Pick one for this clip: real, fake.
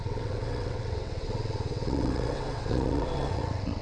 fake